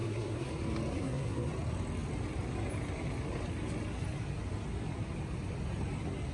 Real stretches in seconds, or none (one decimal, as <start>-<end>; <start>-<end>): 0.5-0.9; 1.5-6.3